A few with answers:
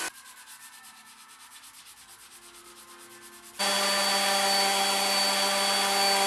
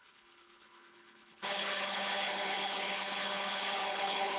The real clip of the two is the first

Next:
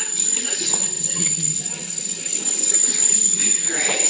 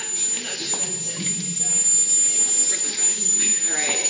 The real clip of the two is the second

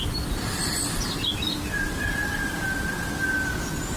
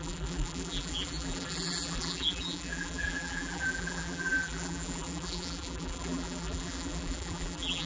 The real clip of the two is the first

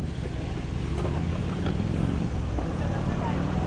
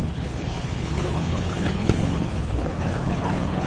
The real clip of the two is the first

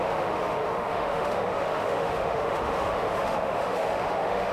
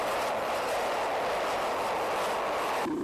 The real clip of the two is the second